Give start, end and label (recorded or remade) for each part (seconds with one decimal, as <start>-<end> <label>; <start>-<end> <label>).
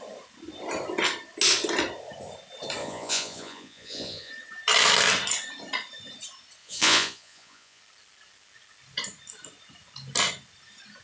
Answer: 0.0-2.8 recorded; 2.8-4.3 remade; 4.3-6.6 recorded; 6.6-7.8 remade; 7.8-11.0 recorded